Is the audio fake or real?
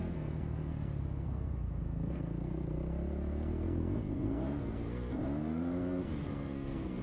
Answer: fake